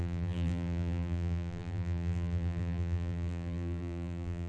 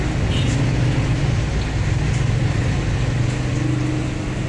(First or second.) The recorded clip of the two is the second